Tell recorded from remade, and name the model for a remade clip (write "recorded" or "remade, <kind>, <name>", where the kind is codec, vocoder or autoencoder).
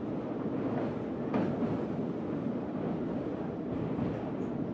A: recorded